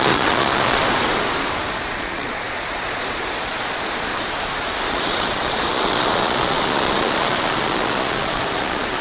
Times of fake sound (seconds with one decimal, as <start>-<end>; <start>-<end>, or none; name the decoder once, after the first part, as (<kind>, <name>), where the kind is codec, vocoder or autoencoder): 0.0-0.8 (vocoder, Vocos); 1.7-4.1; 4.9-9.0